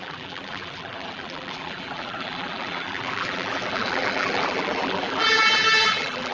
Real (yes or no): no